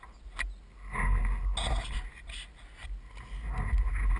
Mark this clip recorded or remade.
recorded